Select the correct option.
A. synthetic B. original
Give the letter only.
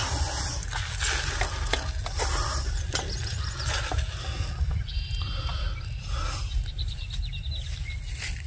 B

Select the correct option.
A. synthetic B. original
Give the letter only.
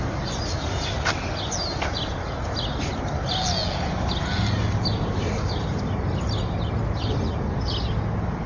B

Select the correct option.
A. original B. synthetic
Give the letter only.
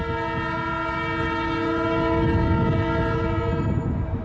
A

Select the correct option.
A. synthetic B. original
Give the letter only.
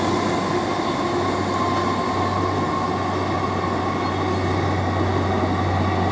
B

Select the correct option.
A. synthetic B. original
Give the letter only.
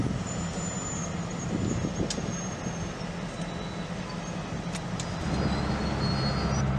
B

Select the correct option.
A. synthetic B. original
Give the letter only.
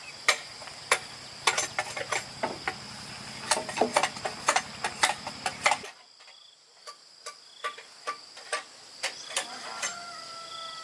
B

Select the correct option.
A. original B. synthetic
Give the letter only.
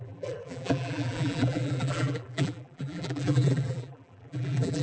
B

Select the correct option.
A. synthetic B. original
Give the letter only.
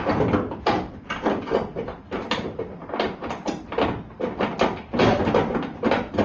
B